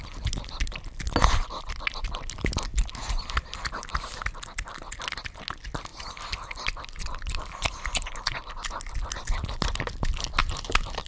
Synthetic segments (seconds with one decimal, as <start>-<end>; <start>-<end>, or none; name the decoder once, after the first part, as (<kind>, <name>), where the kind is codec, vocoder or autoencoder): 10.4-11.1 (vocoder, BigVGAN v2)